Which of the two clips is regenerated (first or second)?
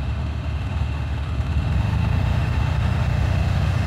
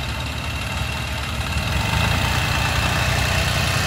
first